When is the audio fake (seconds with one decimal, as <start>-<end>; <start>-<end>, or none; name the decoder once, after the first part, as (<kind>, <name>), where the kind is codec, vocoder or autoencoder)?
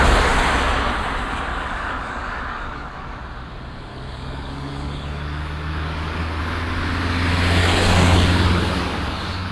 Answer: 1.5-3.2 (codec, DAC); 3.9-6.4; 7.6-9.5